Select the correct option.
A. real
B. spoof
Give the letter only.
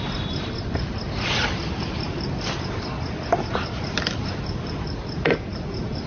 A